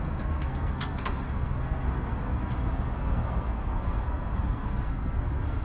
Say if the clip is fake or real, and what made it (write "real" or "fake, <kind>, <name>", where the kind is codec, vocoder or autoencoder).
fake, codec, SNAC